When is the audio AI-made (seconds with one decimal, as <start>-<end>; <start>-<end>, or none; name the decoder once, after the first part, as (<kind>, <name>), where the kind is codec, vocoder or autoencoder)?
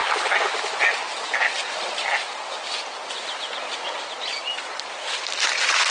1.6-5.9 (vocoder, BigVGAN v2)